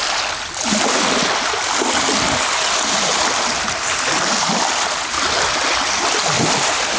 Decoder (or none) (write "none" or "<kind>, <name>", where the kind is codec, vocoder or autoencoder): none